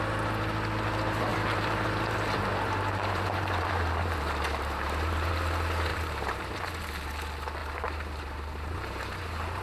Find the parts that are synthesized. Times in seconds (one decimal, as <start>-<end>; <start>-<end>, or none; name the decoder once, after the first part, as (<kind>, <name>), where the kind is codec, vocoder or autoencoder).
1.3-5.3 (vocoder, BigVGAN v2); 5.9-6.4; 7.6-9.2